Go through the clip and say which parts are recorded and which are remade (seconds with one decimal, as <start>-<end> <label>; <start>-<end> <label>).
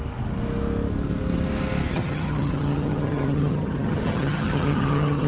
0.0-1.9 recorded; 1.9-5.3 remade